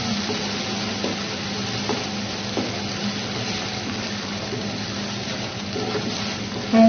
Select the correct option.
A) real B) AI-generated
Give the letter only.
A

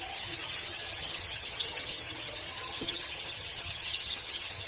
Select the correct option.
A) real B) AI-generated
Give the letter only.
B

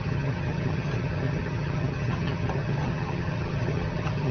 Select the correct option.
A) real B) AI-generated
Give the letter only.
B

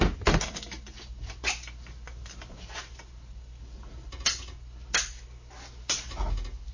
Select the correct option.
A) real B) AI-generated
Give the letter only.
A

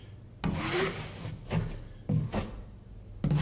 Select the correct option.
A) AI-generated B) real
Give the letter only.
B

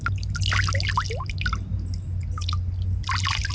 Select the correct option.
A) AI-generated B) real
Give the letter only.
B